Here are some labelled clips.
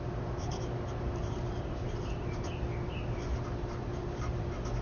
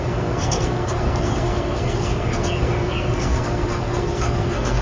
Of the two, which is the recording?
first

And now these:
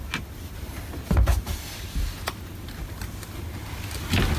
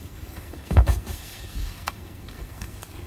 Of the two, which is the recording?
first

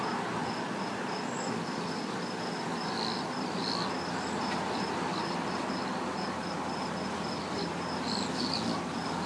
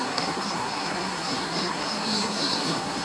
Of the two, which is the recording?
first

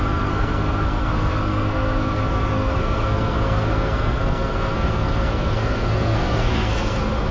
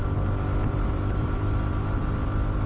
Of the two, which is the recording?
second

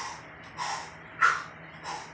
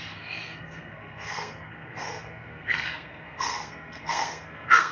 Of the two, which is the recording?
first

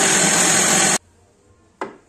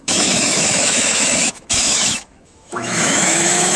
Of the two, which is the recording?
first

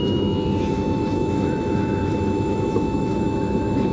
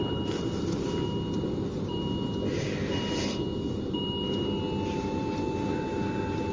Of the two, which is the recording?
second